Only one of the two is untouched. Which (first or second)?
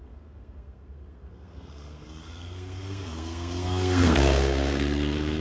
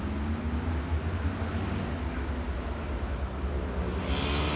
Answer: second